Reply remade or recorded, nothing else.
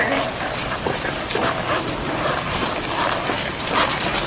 recorded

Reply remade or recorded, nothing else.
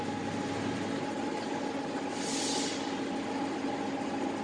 recorded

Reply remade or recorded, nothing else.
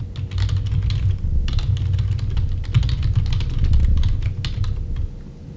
recorded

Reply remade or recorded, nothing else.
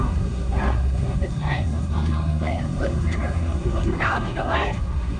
remade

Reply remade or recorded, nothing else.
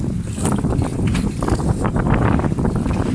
recorded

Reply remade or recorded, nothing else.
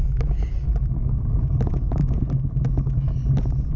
recorded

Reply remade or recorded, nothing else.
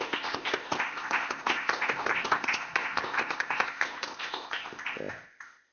remade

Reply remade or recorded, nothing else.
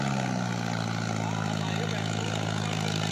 recorded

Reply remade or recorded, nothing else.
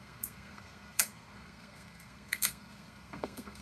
remade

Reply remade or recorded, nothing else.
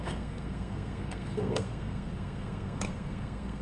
remade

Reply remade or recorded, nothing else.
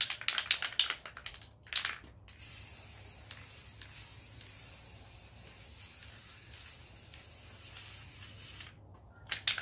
recorded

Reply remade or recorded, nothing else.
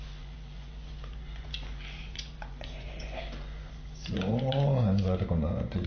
remade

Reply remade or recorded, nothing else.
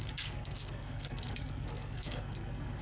remade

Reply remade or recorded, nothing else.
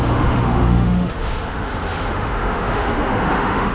remade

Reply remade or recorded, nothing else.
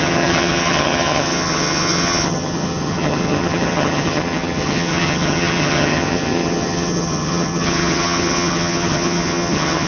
remade